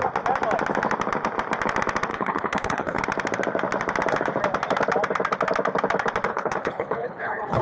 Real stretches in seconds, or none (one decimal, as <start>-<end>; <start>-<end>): 0.0-2.1; 3.0-6.3